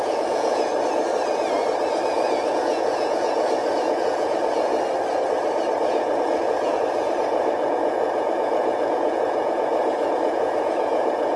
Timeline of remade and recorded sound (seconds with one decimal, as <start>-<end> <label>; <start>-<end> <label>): 0.0-0.7 remade; 0.7-2.1 recorded; 2.1-4.7 remade; 4.7-5.9 recorded; 5.9-11.4 remade

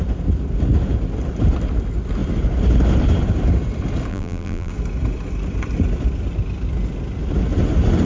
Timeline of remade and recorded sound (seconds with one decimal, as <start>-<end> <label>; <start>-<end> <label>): 0.0-4.1 recorded; 4.1-4.7 remade; 4.7-8.1 recorded

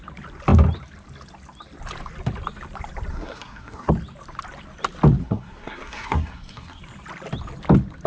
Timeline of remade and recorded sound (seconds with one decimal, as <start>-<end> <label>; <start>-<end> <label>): 0.0-3.1 recorded; 3.1-3.9 remade; 3.9-5.2 recorded; 5.2-6.8 remade; 6.8-8.1 recorded

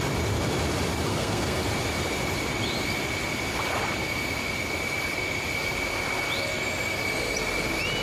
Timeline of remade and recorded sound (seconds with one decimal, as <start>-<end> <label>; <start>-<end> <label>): 0.0-1.1 recorded; 1.1-1.6 remade; 1.6-8.0 recorded